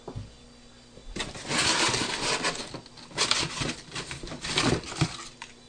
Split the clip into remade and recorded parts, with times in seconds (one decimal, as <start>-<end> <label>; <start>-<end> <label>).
0.0-5.7 recorded